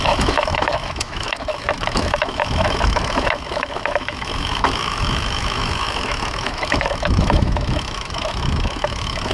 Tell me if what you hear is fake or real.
fake